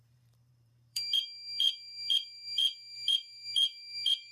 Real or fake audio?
fake